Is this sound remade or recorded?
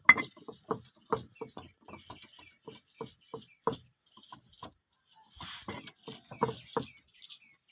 recorded